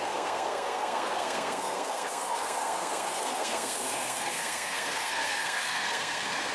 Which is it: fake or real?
fake